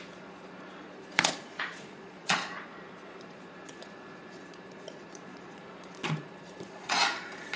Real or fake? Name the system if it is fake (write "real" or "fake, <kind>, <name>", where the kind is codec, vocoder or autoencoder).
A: fake, vocoder, Vocos